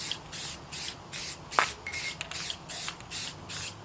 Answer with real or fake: real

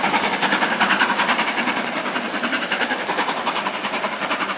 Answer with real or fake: fake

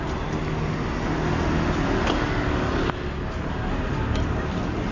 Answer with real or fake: real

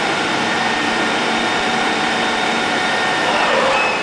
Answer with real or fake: fake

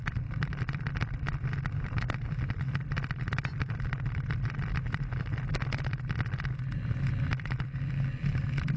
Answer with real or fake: fake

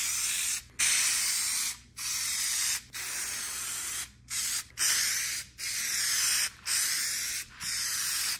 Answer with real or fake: real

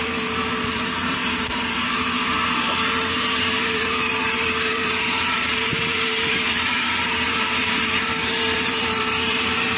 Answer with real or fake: fake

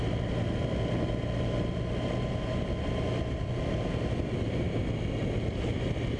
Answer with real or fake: real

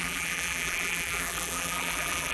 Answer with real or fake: fake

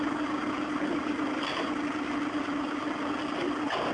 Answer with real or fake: real